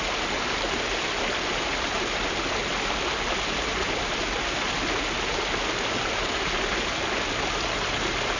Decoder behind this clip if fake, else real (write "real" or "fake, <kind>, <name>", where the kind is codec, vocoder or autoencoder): real